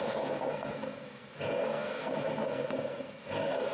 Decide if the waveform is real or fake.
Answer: fake